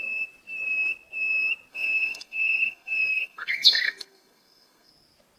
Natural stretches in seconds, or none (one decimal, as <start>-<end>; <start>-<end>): 0.0-1.7; 4.9-5.4